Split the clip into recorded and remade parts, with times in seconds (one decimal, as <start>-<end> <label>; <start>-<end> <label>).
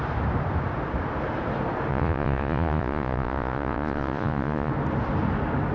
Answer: 0.0-1.9 recorded; 1.9-4.7 remade; 4.7-5.7 recorded